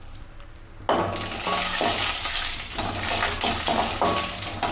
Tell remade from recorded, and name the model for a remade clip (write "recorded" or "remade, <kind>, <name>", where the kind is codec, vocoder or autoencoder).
recorded